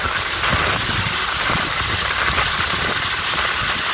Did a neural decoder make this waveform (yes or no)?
no